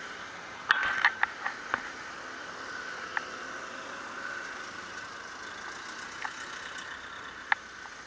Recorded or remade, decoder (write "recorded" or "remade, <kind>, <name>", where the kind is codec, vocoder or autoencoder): recorded